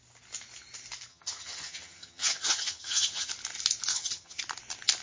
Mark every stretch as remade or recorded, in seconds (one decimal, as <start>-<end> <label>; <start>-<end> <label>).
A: 0.0-1.1 recorded; 1.1-3.3 remade; 3.3-3.9 recorded; 3.9-4.4 remade; 4.4-5.0 recorded